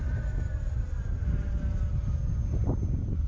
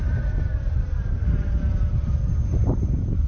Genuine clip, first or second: first